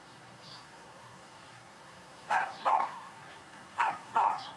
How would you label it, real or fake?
fake